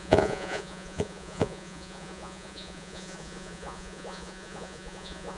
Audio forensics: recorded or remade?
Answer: remade